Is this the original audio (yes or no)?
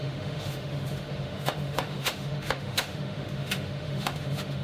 no